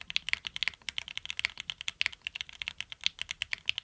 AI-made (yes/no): no